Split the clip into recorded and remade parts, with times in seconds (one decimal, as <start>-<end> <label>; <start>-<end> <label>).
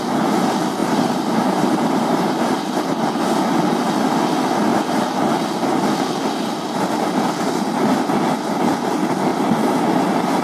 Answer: 0.0-0.8 recorded; 0.8-2.8 remade; 2.8-9.3 recorded; 9.3-10.0 remade; 10.0-10.4 recorded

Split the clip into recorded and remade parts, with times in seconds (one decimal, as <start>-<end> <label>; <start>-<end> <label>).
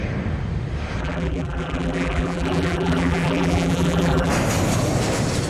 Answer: 0.0-1.0 recorded; 1.0-4.3 remade; 4.3-5.5 recorded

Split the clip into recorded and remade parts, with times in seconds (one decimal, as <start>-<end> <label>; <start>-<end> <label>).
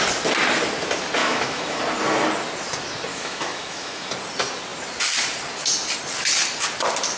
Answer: 0.0-1.2 recorded; 1.2-1.8 remade; 1.8-3.1 recorded; 3.1-4.1 remade; 4.1-7.2 recorded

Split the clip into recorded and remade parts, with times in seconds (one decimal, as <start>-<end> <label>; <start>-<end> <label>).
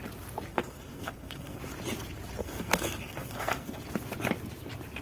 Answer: 0.0-0.5 recorded; 0.5-1.6 remade; 1.6-2.4 recorded; 2.4-3.8 remade; 3.8-5.0 recorded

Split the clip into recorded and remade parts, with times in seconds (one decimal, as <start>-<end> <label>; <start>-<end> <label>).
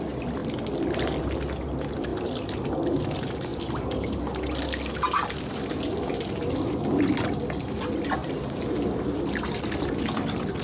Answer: 0.0-3.5 recorded; 3.5-4.2 remade; 4.2-8.2 recorded; 8.2-9.2 remade; 9.2-10.6 recorded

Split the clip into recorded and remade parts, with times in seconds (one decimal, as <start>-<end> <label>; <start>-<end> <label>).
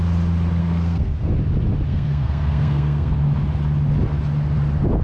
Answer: 0.0-0.6 recorded; 0.6-1.3 remade; 1.3-1.9 recorded; 1.9-3.1 remade; 3.1-5.0 recorded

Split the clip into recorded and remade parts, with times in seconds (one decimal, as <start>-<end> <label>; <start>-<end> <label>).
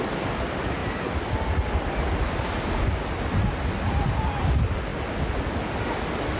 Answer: 0.0-6.4 recorded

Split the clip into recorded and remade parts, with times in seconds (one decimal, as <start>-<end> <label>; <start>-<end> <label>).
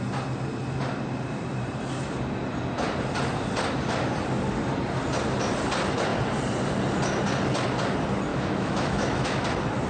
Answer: 0.0-8.3 recorded; 8.3-9.4 remade; 9.4-9.9 recorded